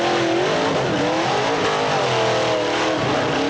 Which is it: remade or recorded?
recorded